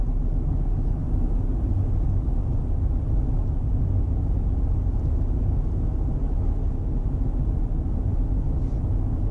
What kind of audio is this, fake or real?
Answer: real